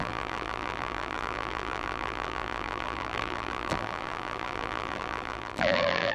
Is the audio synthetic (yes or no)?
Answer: yes